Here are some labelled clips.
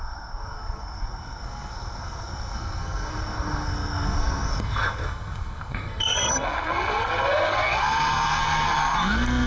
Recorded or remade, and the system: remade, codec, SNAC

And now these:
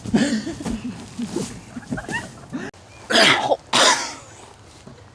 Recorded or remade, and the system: recorded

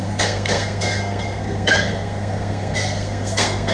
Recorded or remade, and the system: remade, codec, SNAC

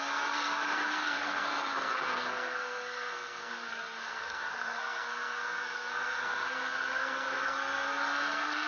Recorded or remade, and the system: remade, codec, SNAC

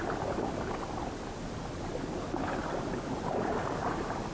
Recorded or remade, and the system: recorded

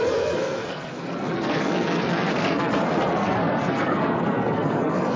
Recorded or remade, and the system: remade, codec, SNAC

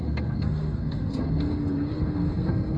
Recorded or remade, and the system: remade, codec, SNAC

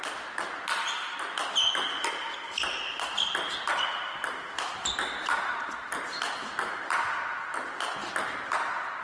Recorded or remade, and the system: recorded